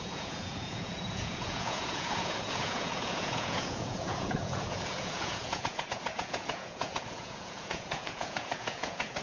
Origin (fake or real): fake